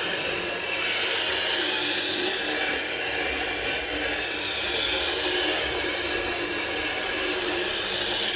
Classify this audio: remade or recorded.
recorded